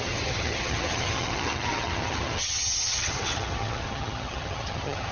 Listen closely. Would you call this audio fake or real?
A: fake